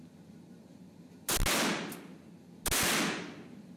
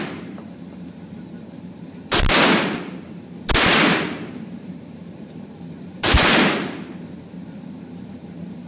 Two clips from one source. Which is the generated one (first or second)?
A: second